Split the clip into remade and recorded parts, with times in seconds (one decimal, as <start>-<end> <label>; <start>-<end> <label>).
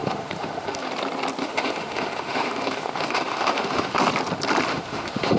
0.0-0.9 remade; 0.9-1.4 recorded; 1.4-4.0 remade; 4.0-4.7 recorded; 4.7-5.4 remade